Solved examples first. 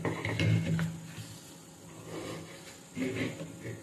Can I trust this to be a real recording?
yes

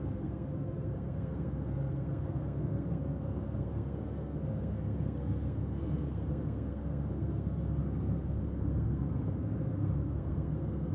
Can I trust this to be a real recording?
no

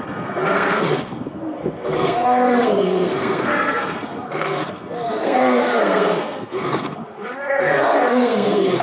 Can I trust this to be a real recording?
no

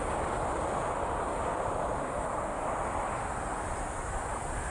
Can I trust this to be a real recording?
yes